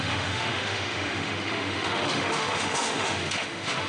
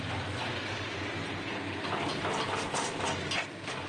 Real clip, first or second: second